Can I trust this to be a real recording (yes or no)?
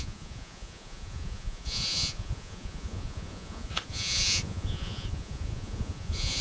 no